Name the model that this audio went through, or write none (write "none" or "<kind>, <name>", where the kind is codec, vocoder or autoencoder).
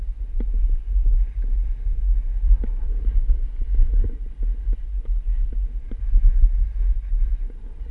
none